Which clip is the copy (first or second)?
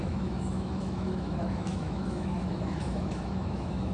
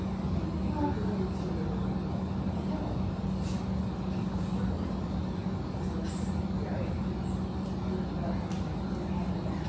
first